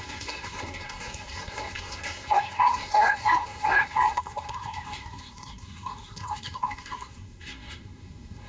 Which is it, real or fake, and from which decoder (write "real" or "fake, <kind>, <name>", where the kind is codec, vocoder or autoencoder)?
fake, codec, SNAC